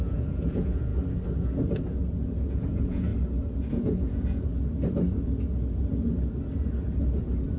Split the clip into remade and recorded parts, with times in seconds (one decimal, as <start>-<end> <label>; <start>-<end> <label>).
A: 0.0-0.9 remade; 0.9-2.5 recorded; 2.5-3.1 remade; 3.1-3.7 recorded; 3.7-4.5 remade; 4.5-7.6 recorded